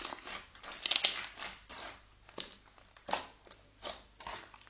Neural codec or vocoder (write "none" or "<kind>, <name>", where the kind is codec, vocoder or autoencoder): none